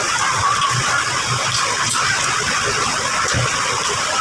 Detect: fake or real real